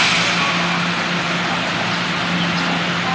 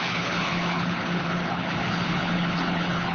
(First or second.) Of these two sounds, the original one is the first